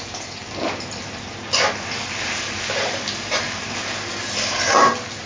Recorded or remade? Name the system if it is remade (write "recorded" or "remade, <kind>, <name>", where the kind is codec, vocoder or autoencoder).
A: recorded